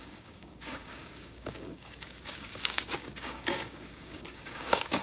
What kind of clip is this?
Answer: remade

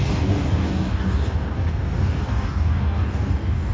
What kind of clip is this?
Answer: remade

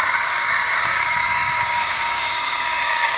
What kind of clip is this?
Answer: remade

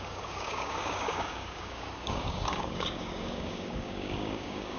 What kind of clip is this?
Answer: remade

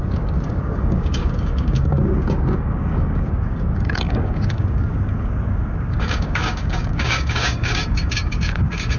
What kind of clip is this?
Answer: remade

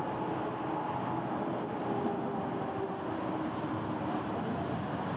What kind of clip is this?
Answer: recorded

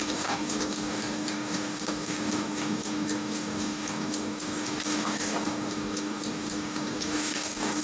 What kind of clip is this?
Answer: remade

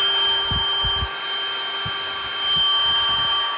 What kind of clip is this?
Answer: recorded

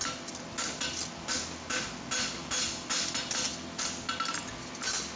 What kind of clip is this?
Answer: recorded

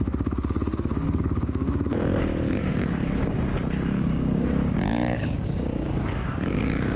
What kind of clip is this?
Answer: remade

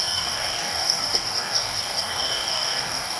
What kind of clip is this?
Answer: remade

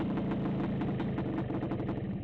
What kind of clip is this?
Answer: recorded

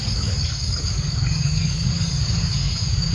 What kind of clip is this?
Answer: remade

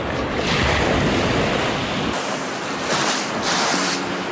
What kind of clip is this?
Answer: recorded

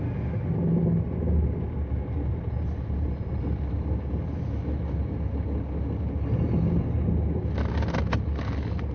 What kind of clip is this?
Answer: recorded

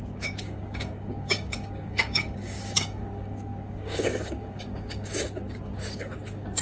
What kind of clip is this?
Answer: remade